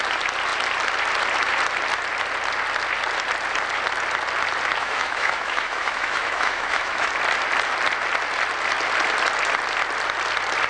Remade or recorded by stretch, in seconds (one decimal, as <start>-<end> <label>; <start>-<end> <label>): 0.0-4.8 recorded; 4.8-7.1 remade; 7.1-10.7 recorded